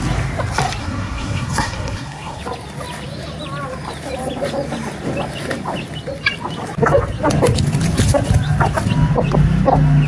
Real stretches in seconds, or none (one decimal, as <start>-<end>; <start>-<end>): 0.0-0.8; 2.4-10.1